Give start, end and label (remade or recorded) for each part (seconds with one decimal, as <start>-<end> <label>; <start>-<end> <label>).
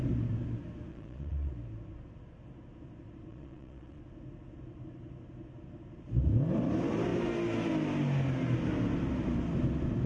0.0-0.9 recorded; 0.9-1.5 remade; 1.5-3.3 recorded; 3.3-4.0 remade; 4.0-10.1 recorded